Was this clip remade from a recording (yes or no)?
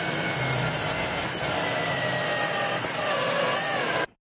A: no